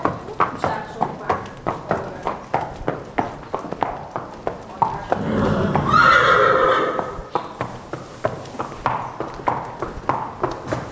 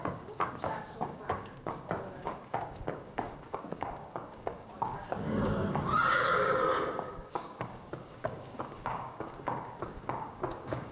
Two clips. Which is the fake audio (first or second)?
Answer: second